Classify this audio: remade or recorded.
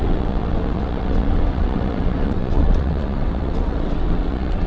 remade